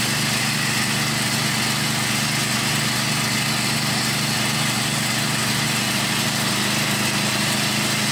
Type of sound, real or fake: real